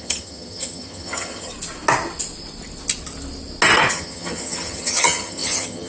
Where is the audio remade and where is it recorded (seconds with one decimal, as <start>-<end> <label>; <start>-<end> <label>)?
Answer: 0.0-1.5 remade; 1.5-3.9 recorded; 3.9-5.9 remade